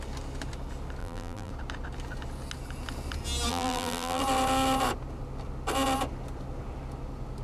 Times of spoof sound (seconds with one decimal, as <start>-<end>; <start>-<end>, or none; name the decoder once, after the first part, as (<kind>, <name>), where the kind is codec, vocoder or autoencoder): 1.0-1.5 (vocoder, BigVGAN v2); 3.5-4.2